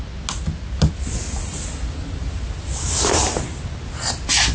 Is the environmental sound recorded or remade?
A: recorded